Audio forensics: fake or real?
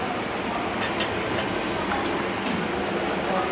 real